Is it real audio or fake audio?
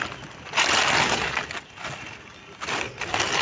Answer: real